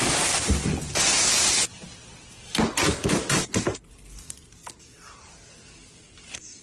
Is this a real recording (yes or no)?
yes